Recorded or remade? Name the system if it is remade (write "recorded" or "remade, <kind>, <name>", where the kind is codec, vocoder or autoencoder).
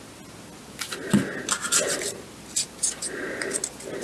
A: recorded